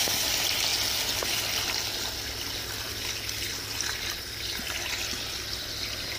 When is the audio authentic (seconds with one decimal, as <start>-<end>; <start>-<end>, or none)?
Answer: 0.0-6.2